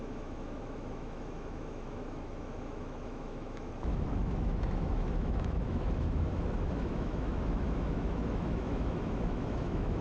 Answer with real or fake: fake